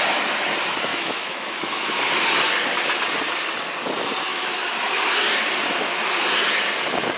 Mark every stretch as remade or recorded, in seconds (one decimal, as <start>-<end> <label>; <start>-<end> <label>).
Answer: 0.0-0.9 recorded; 0.9-2.0 remade; 2.0-4.3 recorded; 4.3-5.1 remade; 5.1-7.2 recorded